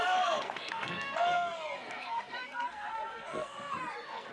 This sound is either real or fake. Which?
fake